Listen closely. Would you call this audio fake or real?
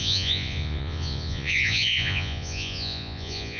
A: fake